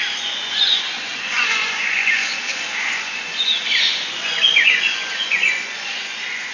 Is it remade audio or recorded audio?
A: remade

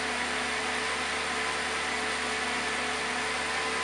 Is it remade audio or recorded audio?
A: recorded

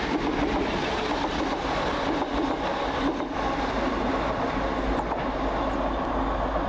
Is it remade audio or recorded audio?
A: recorded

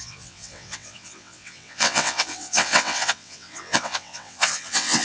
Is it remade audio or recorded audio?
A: remade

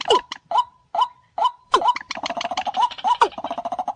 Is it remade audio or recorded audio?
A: remade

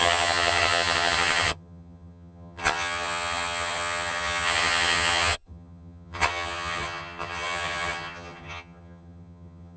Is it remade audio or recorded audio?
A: remade